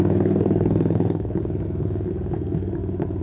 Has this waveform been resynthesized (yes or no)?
yes